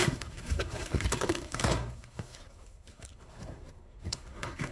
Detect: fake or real fake